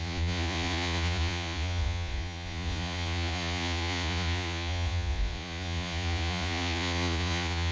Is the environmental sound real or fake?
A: fake